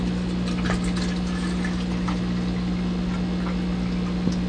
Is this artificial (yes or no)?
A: no